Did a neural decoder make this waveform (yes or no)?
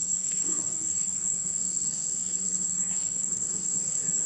yes